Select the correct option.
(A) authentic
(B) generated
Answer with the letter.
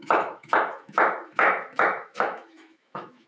B